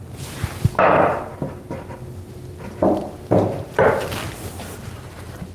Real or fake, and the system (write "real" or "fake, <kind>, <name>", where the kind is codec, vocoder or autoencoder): real